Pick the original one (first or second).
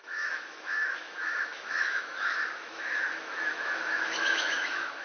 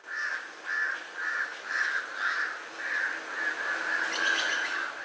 second